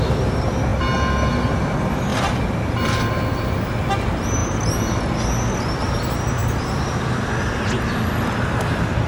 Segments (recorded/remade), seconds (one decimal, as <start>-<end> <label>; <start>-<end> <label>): 0.0-6.4 recorded; 6.4-7.5 remade; 7.5-9.1 recorded